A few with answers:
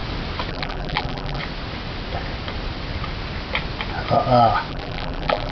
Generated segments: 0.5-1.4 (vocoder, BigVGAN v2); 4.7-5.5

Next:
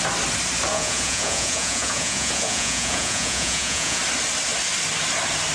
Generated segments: 0.7-4.0 (vocoder, Vocos)

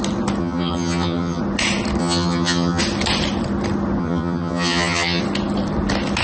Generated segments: 0.4-1.4 (vocoder, HiFi-GAN); 2.0-2.8; 4.0-5.2

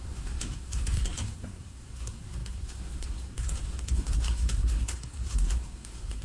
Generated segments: 0.0-6.2 (codec, SNAC)

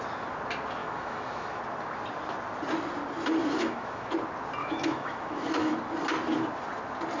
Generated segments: 0.8-1.6 (autoencoder, DAC-VAE); 3.4-4.1; 4.6-5.8

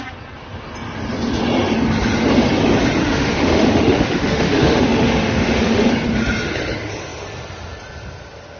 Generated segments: 3.0-5.9 (autoencoder, DAC-VAE)

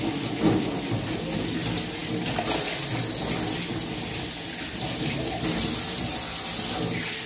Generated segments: none